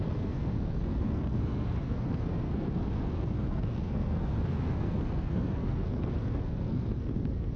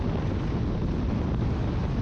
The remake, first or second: first